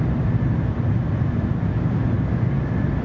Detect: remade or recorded recorded